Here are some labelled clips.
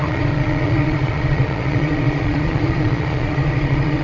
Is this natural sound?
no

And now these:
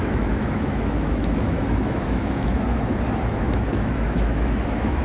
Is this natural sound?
no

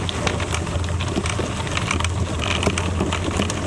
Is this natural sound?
yes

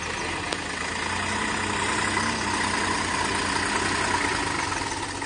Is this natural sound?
yes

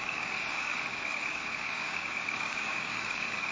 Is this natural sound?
no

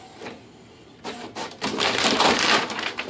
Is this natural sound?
yes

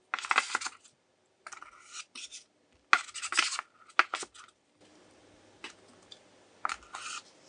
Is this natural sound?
yes